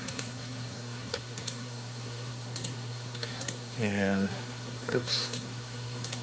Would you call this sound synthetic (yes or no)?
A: yes